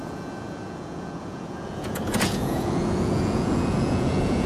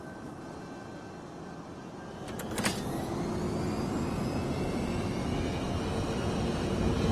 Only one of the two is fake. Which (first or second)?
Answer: first